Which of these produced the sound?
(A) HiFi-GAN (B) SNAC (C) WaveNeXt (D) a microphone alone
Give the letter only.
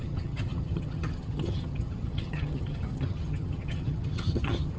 A